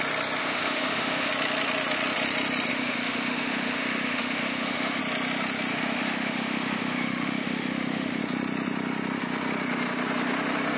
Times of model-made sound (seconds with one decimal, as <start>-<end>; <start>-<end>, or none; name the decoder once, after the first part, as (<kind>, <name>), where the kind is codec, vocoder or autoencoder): 0.4-1.3 (autoencoder, DAC-VAE); 2.7-5.0; 5.7-8.2